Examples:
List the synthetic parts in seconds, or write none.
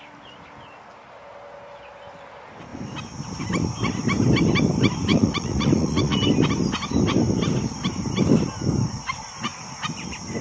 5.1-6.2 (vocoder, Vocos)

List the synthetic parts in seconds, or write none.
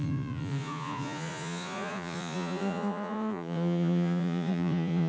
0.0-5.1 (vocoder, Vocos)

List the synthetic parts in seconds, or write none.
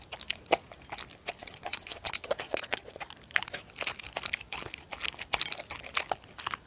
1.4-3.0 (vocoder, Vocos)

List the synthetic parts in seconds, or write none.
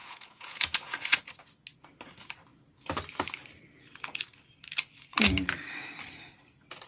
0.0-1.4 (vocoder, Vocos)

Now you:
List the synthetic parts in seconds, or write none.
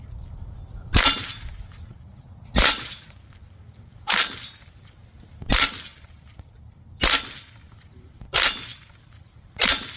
1.9-3.3 (vocoder, Vocos)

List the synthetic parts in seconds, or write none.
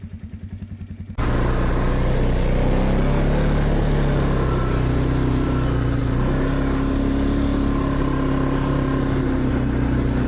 none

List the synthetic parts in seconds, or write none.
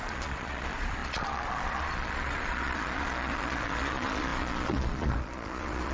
0.0-5.9 (vocoder, Vocos)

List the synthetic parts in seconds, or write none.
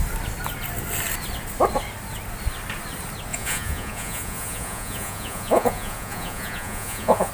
3.3-7.3 (vocoder, Vocos)